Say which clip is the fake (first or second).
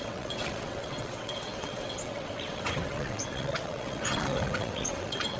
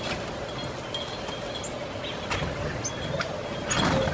first